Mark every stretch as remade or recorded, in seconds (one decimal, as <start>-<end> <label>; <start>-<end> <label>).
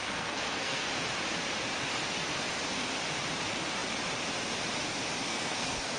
0.0-0.9 remade; 0.9-5.3 recorded; 5.3-6.0 remade